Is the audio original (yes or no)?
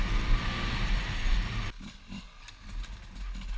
yes